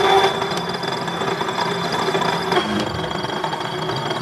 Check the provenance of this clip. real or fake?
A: real